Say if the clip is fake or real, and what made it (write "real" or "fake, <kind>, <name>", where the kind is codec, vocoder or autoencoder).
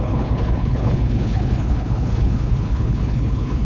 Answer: fake, codec, HILCodec